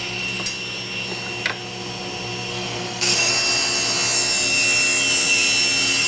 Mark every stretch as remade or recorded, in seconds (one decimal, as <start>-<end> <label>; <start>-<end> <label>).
0.0-2.5 recorded; 2.5-3.3 remade; 3.3-6.1 recorded